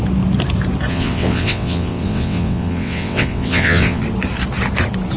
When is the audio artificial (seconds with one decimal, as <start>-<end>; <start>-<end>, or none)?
0.9-4.0